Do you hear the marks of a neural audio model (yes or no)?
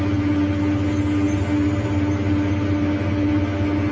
no